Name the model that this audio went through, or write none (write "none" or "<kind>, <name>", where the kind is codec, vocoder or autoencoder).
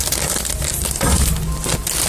none